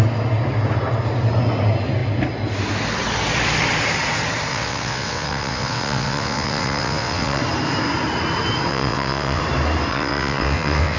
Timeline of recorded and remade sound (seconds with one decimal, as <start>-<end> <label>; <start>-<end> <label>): 0.0-4.5 recorded; 4.5-7.4 remade; 7.4-8.7 recorded; 8.7-9.4 remade; 9.4-9.9 recorded; 9.9-11.0 remade